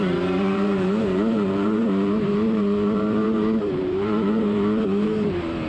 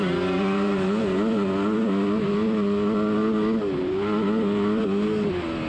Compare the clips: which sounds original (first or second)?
second